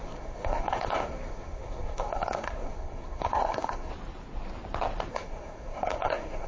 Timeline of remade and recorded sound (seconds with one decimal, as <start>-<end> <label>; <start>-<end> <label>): 0.0-3.9 remade; 3.9-5.1 recorded; 5.1-6.5 remade